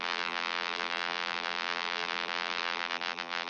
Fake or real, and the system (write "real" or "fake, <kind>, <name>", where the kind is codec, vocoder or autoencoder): fake, vocoder, BigVGAN v2